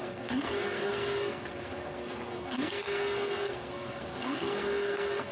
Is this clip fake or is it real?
fake